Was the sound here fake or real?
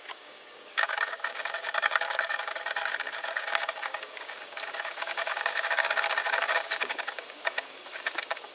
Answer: fake